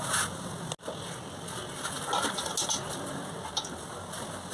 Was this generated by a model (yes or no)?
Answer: no